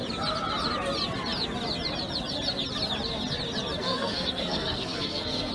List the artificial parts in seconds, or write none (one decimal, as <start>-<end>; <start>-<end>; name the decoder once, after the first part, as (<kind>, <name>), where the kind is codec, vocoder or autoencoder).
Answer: 3.8-5.5 (codec, SNAC)